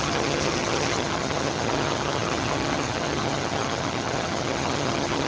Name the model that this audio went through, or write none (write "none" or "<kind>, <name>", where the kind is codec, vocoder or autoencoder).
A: vocoder, HiFi-GAN